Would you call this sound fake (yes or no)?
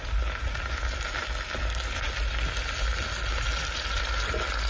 no